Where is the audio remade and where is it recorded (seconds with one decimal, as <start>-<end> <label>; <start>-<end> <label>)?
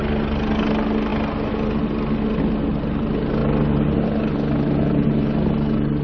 0.0-6.0 recorded